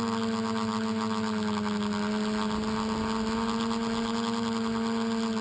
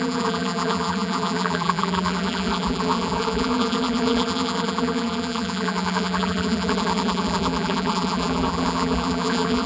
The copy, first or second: second